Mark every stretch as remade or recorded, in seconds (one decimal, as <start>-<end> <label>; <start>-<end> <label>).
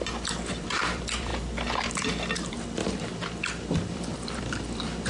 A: 0.0-1.3 remade; 1.3-2.5 recorded; 2.5-5.1 remade